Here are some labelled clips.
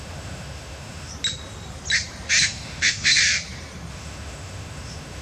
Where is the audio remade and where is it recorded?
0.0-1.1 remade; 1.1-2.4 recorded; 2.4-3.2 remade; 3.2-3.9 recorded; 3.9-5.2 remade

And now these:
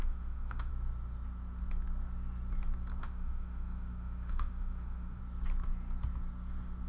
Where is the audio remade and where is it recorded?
0.0-0.7 remade; 0.7-3.0 recorded; 3.0-5.2 remade; 5.2-6.9 recorded